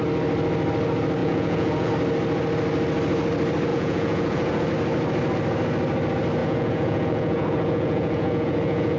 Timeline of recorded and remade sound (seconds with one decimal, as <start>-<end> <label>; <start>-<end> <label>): 0.0-1.2 recorded; 1.2-1.9 remade; 1.9-3.7 recorded; 3.7-4.7 remade; 4.7-6.4 recorded; 6.4-9.0 remade